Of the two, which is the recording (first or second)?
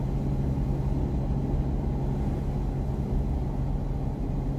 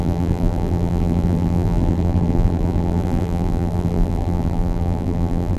first